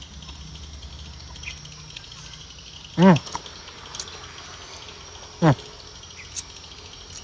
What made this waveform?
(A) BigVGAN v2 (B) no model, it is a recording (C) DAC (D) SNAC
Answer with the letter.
B